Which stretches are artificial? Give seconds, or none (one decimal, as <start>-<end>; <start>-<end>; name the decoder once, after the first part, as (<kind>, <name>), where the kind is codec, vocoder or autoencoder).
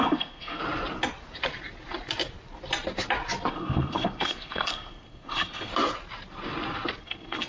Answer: 0.0-0.6 (codec, SNAC); 3.5-5.7; 7.0-7.5